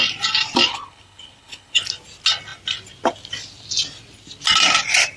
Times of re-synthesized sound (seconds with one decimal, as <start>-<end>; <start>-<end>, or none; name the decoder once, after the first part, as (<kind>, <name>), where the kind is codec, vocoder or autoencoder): 0.7-1.8 (codec, HILCodec)